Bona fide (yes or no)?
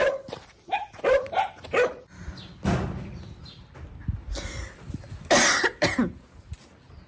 yes